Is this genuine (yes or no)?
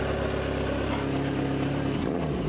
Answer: yes